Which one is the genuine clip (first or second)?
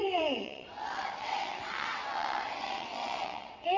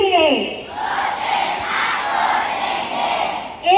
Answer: second